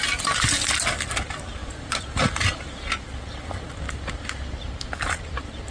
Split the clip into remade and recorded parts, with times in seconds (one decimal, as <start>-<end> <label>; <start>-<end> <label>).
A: 0.0-5.7 recorded